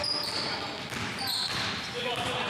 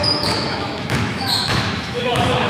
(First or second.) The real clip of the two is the first